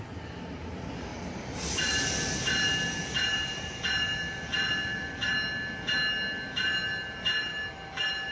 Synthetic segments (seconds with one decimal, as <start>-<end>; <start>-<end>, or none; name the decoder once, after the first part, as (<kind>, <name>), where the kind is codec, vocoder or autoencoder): 1.1-5.3 (vocoder, BigVGAN v2)